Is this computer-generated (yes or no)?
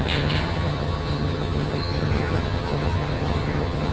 yes